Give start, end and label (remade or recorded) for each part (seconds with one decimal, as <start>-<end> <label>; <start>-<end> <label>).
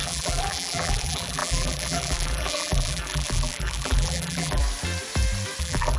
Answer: 0.0-4.6 remade; 4.6-5.6 recorded; 5.6-6.0 remade